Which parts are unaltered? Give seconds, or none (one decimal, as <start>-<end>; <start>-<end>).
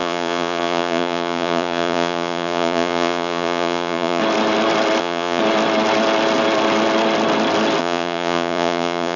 4.2-5.0; 5.4-7.8